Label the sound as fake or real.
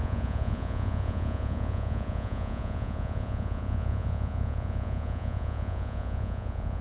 fake